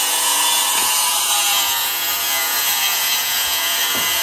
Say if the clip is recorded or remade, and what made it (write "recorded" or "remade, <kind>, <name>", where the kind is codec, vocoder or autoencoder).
remade, vocoder, Vocos